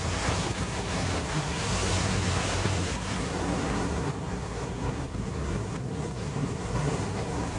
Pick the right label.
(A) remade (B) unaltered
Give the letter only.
A